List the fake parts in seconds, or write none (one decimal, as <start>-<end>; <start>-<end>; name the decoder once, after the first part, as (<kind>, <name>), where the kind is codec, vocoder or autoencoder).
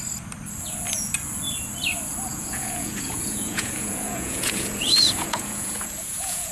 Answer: 2.3-6.5 (vocoder, Vocos)